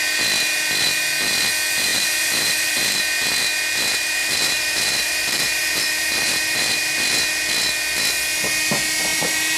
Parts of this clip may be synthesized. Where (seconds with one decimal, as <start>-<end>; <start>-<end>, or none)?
1.9-3.0; 4.2-6.6; 9.1-9.6